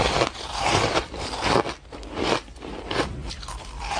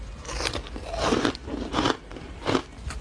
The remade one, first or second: first